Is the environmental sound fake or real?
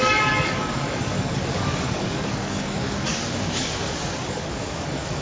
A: fake